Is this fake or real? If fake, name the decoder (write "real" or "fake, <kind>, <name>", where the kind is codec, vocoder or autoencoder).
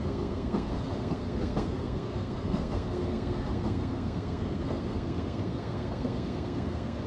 fake, codec, SNAC